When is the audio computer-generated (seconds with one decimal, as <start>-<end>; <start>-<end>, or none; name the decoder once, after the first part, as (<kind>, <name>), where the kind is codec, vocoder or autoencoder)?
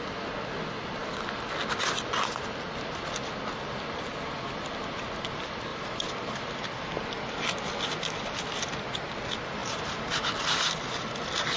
5.7-6.3 (vocoder, BigVGAN v2); 9.6-10.3